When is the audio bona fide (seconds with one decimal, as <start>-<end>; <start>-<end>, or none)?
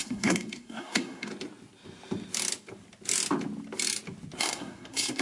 1.3-4.4